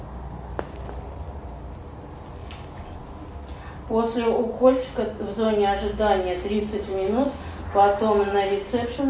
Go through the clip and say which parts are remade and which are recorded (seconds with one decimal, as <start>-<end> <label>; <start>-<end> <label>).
0.0-2.4 recorded; 2.4-3.0 remade; 3.0-6.9 recorded; 6.9-7.5 remade; 7.5-9.1 recorded